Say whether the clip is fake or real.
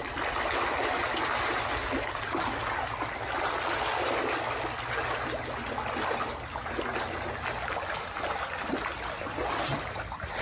real